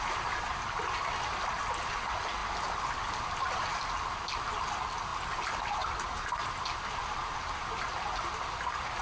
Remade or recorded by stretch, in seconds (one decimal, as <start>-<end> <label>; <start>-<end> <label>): 0.0-9.0 recorded